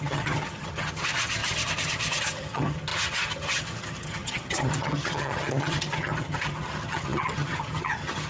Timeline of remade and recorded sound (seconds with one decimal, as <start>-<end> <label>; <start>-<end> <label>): 0.0-8.3 remade